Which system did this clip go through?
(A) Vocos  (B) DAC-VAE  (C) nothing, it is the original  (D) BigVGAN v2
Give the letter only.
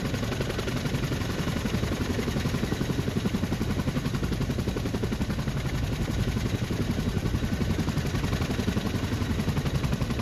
C